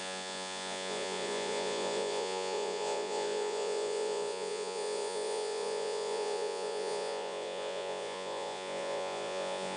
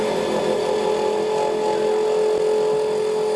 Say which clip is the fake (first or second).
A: first